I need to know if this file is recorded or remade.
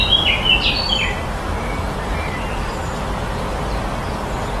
recorded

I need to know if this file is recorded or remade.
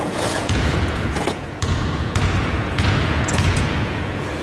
remade